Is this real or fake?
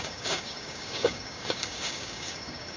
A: fake